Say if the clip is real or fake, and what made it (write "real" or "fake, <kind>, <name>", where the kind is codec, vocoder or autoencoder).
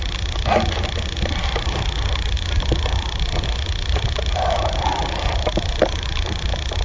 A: real